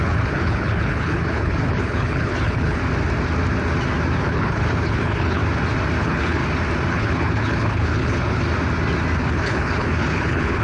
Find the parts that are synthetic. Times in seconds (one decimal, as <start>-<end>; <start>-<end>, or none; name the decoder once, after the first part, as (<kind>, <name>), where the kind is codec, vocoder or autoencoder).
0.0-2.8 (codec, HILCodec); 4.2-5.4; 6.0-6.4; 6.9-8.4; 9.2-10.6